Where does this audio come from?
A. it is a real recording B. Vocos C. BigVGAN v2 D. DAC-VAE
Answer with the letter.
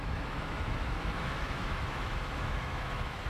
D